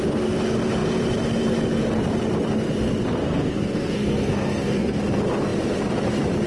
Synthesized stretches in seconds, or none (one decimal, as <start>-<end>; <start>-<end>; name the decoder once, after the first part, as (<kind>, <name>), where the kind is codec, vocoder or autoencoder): 3.2-5.0 (codec, SNAC)